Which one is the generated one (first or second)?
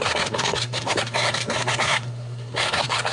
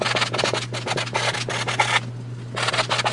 first